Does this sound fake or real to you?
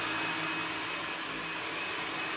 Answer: real